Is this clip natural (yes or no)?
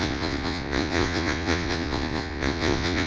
no